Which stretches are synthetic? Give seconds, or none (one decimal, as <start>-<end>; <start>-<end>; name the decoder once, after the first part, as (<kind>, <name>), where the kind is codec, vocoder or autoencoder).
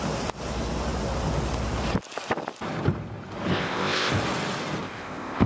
3.5-4.1 (codec, ZipCodec); 4.8-5.5